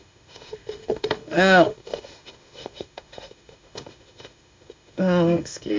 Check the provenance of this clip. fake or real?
fake